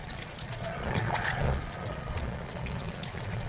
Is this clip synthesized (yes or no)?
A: yes